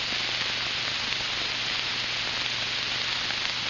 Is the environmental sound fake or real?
real